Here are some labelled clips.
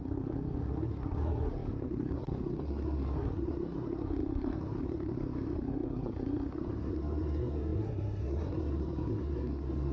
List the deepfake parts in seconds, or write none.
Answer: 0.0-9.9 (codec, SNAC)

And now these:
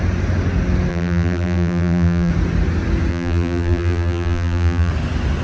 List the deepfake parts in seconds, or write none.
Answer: 0.9-2.3 (vocoder, BigVGAN v2); 3.1-4.9

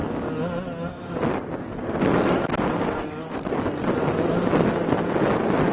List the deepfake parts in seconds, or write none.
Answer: none

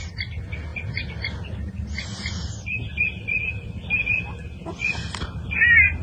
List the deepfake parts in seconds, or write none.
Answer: 4.8-5.6 (vocoder, BigVGAN v2)

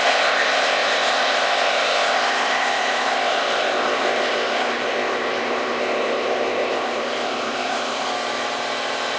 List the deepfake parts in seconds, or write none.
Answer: 0.0-8.1 (codec, ZipCodec)

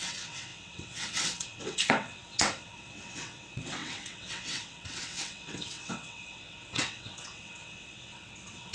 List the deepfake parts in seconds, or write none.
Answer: 0.0-8.7 (vocoder, WaveNeXt)

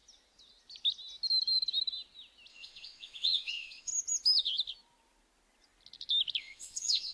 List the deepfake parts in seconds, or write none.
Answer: 2.5-3.9 (vocoder, WaveNeXt); 6.4-7.1

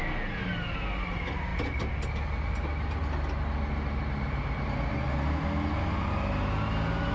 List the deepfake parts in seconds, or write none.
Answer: none